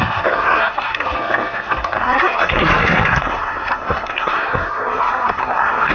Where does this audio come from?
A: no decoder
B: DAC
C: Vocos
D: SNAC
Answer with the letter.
D